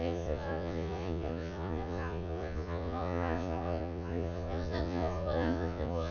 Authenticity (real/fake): fake